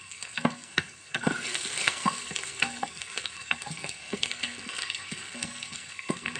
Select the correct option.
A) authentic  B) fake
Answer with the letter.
B